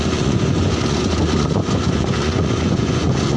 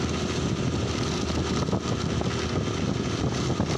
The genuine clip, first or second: second